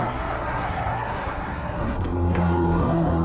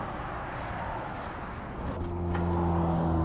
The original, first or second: second